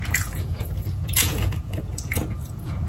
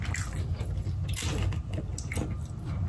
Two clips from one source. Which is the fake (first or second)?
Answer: first